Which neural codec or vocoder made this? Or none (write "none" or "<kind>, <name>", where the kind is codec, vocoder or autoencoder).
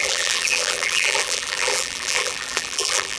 vocoder, BigVGAN v2